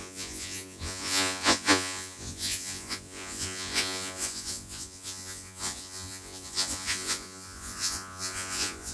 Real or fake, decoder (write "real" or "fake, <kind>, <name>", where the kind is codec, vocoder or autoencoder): fake, vocoder, Vocos